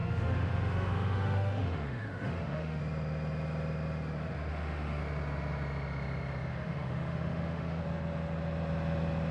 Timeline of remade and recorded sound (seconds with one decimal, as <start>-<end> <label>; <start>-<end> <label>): 0.0-2.8 remade; 2.8-4.5 recorded; 4.5-5.0 remade; 5.0-6.5 recorded; 6.5-7.8 remade; 7.8-9.3 recorded